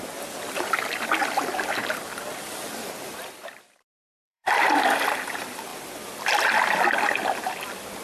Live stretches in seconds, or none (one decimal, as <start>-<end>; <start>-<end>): 0.0-3.1; 4.6-5.7; 7.1-8.0